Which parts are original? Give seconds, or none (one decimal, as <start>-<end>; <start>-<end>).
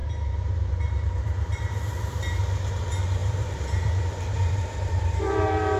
2.4-3.2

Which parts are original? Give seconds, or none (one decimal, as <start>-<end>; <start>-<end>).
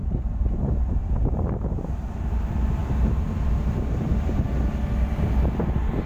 0.6-1.0; 2.4-2.8; 4.6-6.1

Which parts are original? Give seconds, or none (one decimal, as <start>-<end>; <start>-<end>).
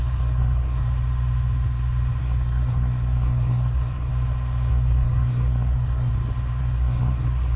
0.8-2.2; 4.1-4.7; 6.1-6.6